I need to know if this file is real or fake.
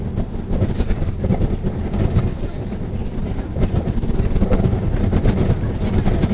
real